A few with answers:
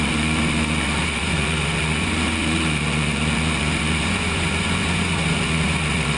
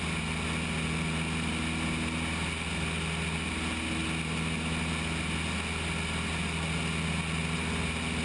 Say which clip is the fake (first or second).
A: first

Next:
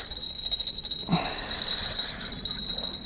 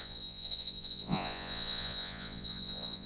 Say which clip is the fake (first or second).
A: second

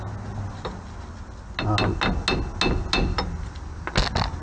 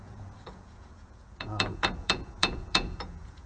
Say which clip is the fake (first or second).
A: second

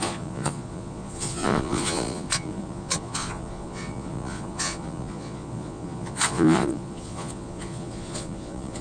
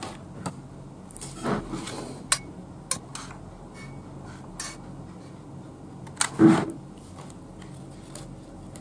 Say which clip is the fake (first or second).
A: first